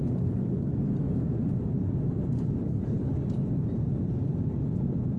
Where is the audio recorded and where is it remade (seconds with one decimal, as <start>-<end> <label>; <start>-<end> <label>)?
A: 0.0-2.6 recorded; 2.6-3.1 remade; 3.1-5.2 recorded